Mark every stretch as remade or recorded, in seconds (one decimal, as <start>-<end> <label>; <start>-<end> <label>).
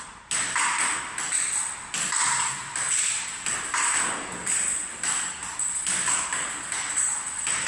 0.0-7.7 recorded